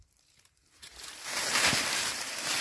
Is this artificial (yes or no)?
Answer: yes